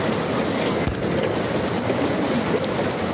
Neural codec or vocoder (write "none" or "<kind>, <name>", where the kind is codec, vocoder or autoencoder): none